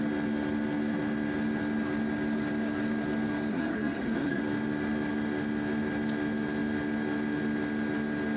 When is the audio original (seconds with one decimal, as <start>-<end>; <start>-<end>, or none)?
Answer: 0.0-3.5; 4.4-8.4